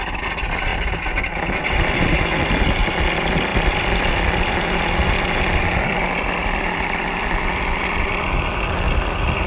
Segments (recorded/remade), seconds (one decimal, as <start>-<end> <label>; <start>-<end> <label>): 0.0-9.5 recorded